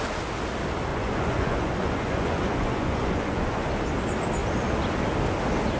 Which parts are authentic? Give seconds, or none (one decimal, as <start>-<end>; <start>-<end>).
0.0-0.9; 3.7-5.8